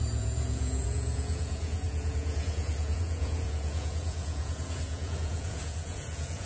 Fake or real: fake